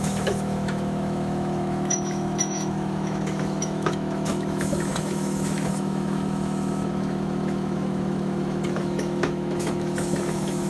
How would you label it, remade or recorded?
remade